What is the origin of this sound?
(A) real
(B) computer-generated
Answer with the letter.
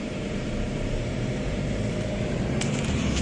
B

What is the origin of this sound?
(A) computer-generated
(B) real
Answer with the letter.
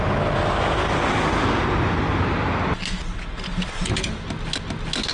B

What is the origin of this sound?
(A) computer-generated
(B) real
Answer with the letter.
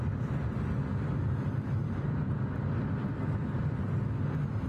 B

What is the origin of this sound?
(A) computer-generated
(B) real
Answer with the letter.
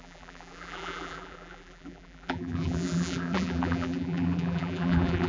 A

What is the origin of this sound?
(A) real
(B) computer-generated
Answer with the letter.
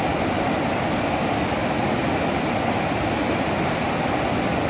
A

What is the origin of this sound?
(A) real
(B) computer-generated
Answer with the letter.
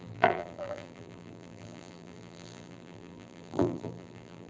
B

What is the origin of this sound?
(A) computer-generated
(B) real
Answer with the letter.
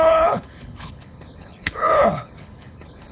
A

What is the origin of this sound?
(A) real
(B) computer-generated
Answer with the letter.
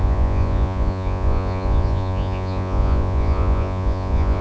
B